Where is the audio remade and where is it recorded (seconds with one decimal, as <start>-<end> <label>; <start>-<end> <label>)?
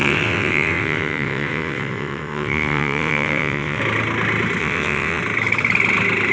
0.0-3.8 remade; 3.8-4.6 recorded; 4.6-5.2 remade; 5.2-6.3 recorded